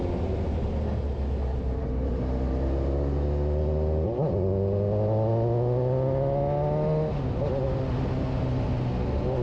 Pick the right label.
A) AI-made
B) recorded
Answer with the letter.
B